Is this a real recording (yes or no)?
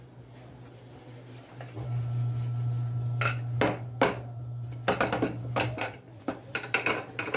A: yes